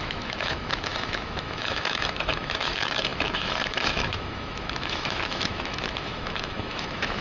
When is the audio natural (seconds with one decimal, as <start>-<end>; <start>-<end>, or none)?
none